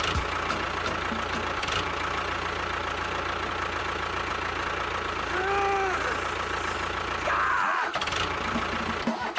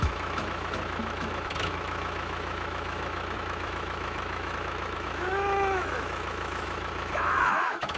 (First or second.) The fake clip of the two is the second